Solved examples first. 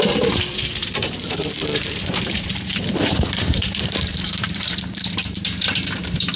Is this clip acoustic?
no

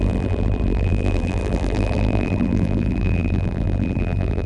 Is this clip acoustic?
no